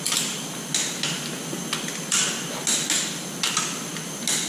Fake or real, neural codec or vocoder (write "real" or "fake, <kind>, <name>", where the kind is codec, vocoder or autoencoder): real